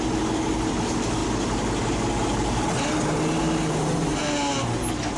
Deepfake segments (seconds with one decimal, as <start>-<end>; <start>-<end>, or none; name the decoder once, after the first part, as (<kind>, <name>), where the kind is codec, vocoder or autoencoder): none